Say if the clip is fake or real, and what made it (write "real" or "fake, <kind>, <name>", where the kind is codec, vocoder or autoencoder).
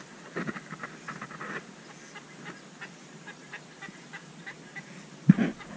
real